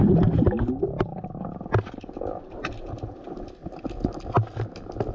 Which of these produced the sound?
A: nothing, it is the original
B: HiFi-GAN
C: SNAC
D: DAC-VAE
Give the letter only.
A